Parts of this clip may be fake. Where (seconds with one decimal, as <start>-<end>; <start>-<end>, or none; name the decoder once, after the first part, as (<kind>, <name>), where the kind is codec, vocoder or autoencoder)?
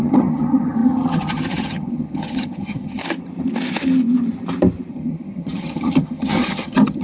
0.0-3.0 (vocoder, HiFi-GAN); 4.9-7.0